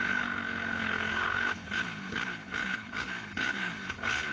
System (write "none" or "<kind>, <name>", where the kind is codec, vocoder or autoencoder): codec, HILCodec